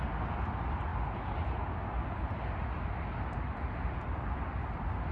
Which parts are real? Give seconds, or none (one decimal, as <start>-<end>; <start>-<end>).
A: 0.0-5.1